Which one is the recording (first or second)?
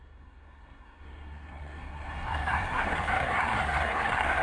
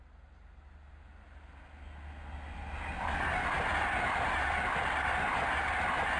second